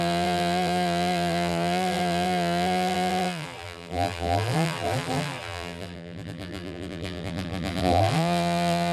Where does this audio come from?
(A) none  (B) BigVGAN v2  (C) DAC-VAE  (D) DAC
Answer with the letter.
B